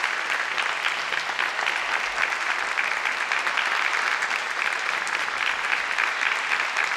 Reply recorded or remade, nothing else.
recorded